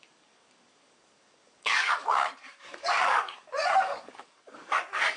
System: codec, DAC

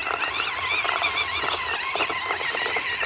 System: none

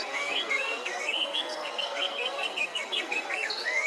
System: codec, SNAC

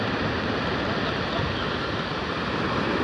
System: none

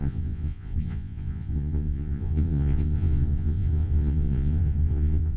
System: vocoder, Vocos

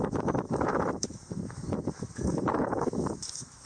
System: autoencoder, DAC-VAE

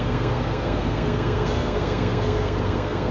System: codec, SNAC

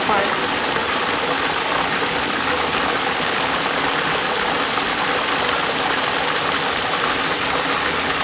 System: none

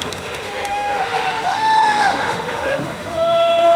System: autoencoder, DAC-VAE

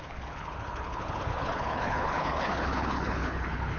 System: codec, HILCodec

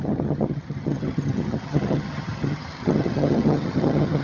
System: vocoder, HiFi-GAN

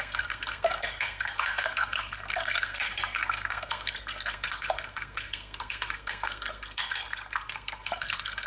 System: codec, SNAC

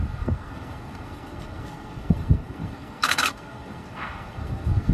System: codec, SNAC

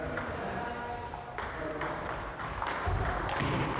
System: none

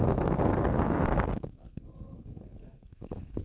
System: codec, SNAC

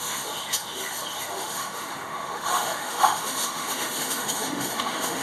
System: autoencoder, DAC-VAE